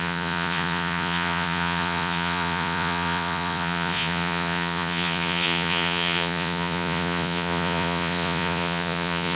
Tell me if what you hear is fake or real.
fake